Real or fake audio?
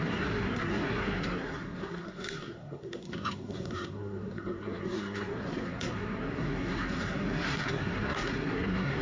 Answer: fake